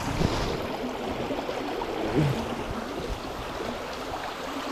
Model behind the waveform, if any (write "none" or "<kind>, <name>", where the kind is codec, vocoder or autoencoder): none